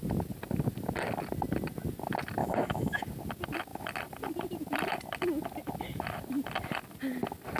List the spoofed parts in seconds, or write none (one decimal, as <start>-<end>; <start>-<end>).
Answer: 2.4-3.0